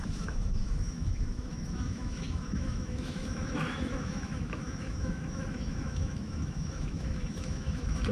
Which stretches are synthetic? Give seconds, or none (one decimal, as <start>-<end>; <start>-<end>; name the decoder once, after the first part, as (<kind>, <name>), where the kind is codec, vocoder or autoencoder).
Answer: 0.0-8.1 (autoencoder, DAC-VAE)